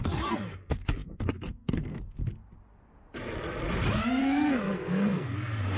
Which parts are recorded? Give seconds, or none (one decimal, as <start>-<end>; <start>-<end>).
2.2-4.2